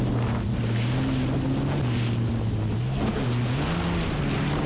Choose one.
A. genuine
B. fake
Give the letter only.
A